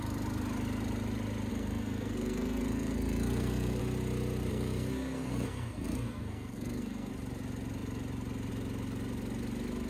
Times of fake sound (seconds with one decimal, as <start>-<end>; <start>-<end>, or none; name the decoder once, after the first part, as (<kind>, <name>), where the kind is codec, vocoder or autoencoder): 1.5-3.8 (codec, SNAC); 4.5-7.1